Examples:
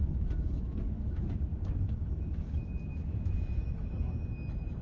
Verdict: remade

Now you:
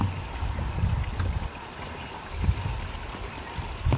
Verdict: recorded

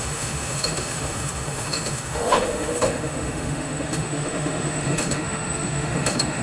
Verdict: remade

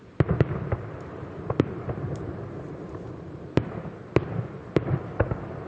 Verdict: remade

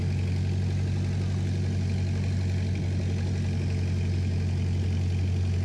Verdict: recorded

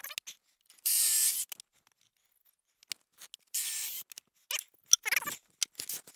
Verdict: recorded